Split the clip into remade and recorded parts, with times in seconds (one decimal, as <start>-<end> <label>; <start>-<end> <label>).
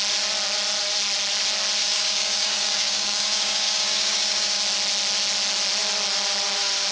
0.0-1.8 recorded; 1.8-4.6 remade; 4.6-6.9 recorded